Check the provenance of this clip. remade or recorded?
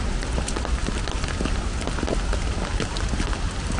recorded